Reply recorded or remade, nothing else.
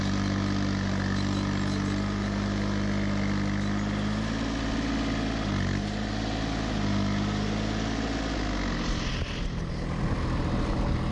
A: recorded